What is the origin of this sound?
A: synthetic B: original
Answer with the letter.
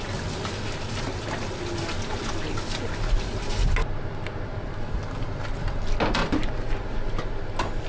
B